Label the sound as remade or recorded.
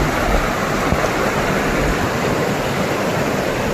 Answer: recorded